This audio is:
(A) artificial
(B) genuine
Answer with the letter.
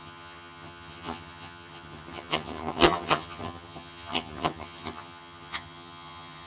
A